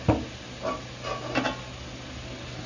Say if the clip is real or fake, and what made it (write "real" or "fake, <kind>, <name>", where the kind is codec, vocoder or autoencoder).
real